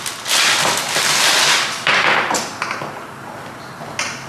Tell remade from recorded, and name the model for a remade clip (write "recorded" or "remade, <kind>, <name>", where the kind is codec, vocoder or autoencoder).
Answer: recorded